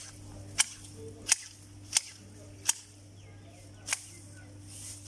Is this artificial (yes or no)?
no